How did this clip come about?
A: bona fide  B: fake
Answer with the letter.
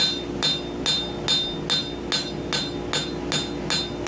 A